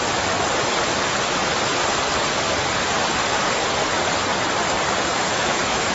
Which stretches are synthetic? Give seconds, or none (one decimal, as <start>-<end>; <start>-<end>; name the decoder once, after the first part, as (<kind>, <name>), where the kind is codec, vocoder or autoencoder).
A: 5.1-5.9 (autoencoder, DAC-VAE)